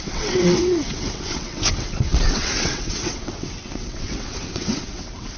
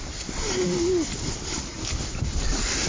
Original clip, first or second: second